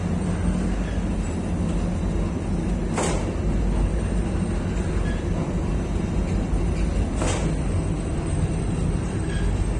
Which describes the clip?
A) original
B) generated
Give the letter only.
A